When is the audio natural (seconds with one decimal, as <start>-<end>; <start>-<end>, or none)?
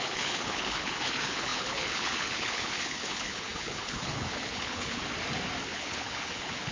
5.0-5.6